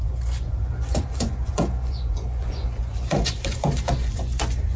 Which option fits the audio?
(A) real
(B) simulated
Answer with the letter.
B